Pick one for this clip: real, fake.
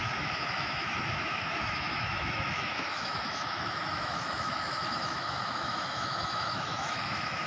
fake